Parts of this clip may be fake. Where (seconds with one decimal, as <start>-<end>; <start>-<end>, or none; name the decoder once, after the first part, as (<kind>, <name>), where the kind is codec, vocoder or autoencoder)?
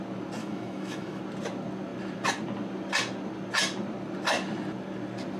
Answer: 0.4-1.2 (autoencoder, DAC-VAE)